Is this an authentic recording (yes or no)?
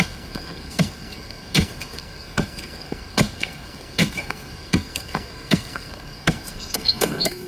no